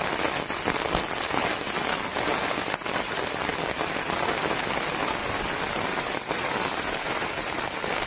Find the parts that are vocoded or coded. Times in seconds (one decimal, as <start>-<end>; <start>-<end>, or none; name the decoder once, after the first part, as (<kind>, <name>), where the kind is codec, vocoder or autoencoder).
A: 5.2-8.1 (vocoder, BigVGAN v2)

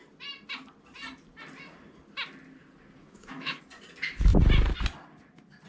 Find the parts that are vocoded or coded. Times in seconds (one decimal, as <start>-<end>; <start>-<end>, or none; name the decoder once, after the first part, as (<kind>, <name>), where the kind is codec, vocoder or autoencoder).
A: 3.0-3.6 (autoencoder, DAC-VAE)

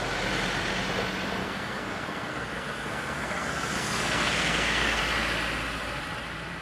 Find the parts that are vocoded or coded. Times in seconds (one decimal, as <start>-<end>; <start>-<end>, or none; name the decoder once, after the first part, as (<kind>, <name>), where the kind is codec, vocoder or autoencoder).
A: 1.4-5.0 (codec, SNAC)

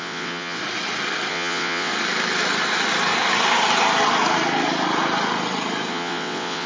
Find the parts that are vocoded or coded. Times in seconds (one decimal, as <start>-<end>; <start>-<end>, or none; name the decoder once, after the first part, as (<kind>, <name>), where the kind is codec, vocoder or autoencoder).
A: 0.0-0.6 (vocoder, WaveNeXt); 1.3-1.9; 5.9-6.7

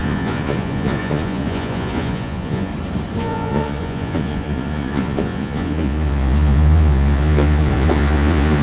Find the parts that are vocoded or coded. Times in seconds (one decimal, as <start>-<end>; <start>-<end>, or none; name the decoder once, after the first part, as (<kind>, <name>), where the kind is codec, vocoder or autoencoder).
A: 0.0-2.7 (vocoder, Vocos); 3.2-8.6

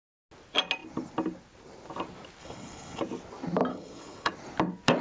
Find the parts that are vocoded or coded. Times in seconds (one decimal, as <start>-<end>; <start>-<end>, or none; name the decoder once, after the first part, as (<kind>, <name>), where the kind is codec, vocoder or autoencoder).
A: 2.4-3.0 (codec, HILCodec); 3.7-4.3

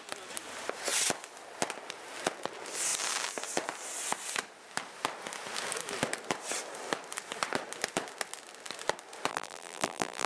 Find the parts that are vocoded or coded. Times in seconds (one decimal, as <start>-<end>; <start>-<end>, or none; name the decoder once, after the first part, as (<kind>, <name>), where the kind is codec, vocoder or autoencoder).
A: 9.3-10.3 (vocoder, BigVGAN v2)

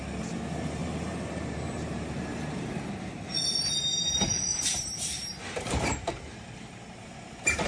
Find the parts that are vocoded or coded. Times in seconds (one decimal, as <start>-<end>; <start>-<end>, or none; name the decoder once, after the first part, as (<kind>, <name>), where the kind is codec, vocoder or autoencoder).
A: 0.8-2.9 (vocoder, BigVGAN v2); 4.5-6.1